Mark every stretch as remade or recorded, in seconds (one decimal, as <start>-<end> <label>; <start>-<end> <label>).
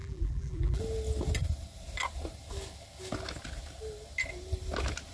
0.0-0.8 remade; 0.8-5.1 recorded